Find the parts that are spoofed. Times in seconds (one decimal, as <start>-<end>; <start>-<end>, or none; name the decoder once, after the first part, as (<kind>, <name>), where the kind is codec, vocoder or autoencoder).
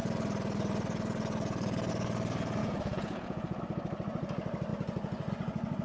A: 2.6-3.6 (vocoder, Vocos)